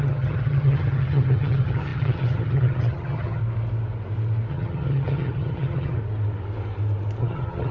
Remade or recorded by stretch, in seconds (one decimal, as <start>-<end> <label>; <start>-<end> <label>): 0.0-3.4 remade; 3.4-4.5 recorded; 4.5-6.0 remade; 6.0-7.2 recorded; 7.2-7.7 remade